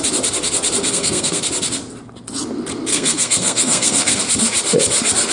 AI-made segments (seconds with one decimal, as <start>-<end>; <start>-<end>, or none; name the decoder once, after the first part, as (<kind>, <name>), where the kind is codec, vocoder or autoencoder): 0.8-1.4 (codec, SNAC); 2.9-4.2